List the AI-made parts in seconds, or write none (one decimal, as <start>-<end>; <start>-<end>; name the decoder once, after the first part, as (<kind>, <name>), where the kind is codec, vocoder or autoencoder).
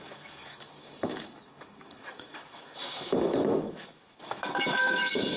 0.0-5.4 (autoencoder, DAC-VAE)